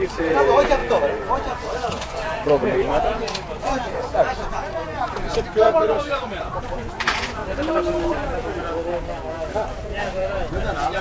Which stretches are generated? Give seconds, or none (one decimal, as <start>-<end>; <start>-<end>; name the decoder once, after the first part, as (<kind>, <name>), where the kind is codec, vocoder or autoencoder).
0.0-7.4 (vocoder, Vocos); 9.8-11.0